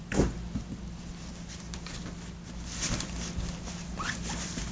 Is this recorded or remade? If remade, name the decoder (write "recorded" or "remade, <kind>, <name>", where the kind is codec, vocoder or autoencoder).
recorded